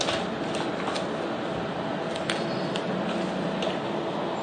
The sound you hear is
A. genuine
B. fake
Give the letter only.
A